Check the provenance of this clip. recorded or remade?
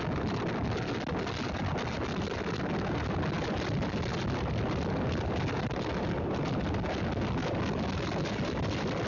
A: recorded